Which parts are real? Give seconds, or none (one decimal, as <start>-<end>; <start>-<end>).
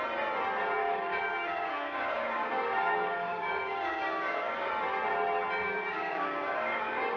0.0-0.8; 4.7-5.6